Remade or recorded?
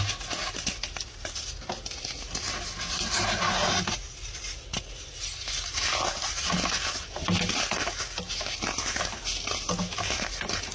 recorded